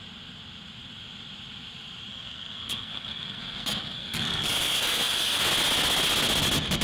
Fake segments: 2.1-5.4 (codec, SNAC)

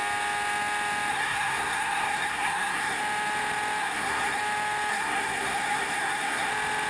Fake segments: 1.1-3.0 (codec, SNAC); 3.8-4.4; 4.9-6.5

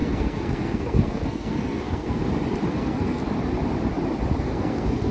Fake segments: 0.0-2.2 (codec, SNAC); 2.7-3.2; 4.4-5.1

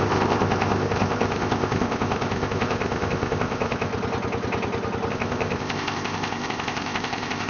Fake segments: 0.0-3.9 (codec, ZipCodec); 5.1-7.5

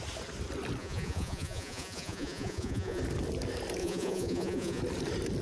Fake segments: 0.8-3.0 (vocoder, Vocos); 3.8-4.8

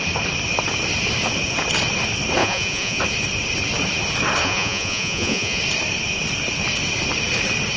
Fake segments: 2.4-3.0 (vocoder, Vocos); 4.4-5.6

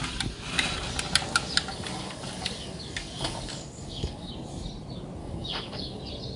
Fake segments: 1.7-4.3 (codec, DAC); 5.2-6.0